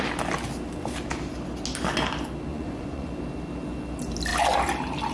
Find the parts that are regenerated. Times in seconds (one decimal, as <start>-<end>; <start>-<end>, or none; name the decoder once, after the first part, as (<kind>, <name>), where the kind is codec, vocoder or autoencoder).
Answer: 2.5-3.1 (vocoder, Vocos)